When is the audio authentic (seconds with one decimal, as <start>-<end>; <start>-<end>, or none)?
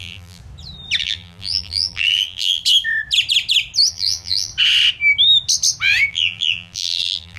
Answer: 0.4-1.0; 2.6-3.9; 4.5-6.1